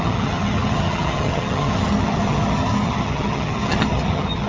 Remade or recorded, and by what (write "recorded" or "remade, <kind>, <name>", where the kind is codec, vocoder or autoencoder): remade, vocoder, HiFi-GAN